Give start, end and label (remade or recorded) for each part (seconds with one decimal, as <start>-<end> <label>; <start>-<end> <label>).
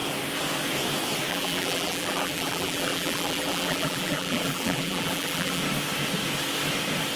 0.0-1.3 recorded; 1.3-5.6 remade; 5.6-7.2 recorded